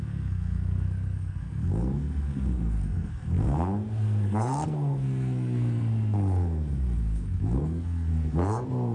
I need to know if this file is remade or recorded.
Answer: remade